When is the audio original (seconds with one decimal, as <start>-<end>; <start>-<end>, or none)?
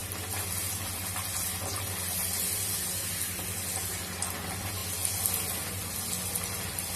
0.0-7.0